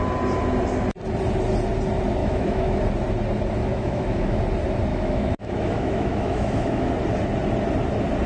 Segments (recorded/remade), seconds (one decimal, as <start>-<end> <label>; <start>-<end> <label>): 0.0-2.2 recorded; 2.2-2.8 remade; 2.8-3.6 recorded; 3.6-4.4 remade; 4.4-4.9 recorded; 4.9-6.9 remade; 6.9-8.3 recorded